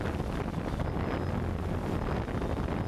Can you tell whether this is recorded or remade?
recorded